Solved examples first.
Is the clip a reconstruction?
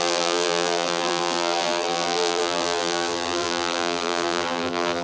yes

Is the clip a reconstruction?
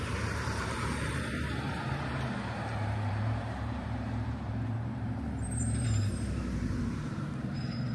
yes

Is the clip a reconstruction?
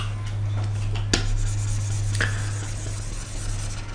no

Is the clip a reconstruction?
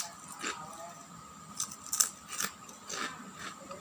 no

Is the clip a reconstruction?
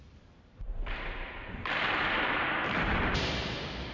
yes